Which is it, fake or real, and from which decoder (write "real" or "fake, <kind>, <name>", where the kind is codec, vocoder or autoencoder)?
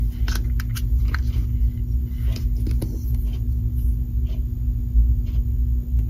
real